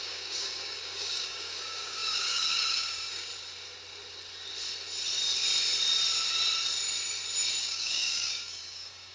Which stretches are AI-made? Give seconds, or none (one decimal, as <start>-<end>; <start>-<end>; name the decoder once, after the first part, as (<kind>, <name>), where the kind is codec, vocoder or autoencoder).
0.0-3.3 (codec, DAC); 7.6-9.1